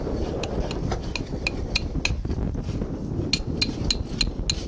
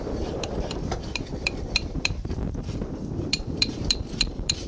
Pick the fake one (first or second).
second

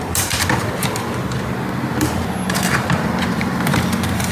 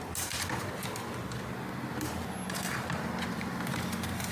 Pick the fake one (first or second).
first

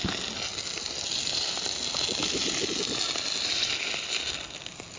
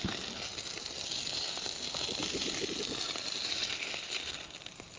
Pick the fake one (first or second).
second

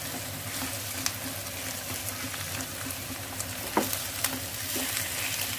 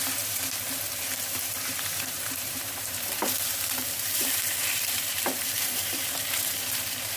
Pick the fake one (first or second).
second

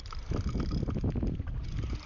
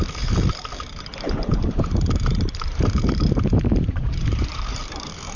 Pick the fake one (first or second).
second